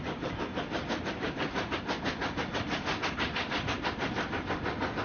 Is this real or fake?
real